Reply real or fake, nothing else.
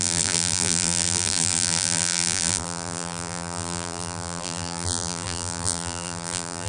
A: fake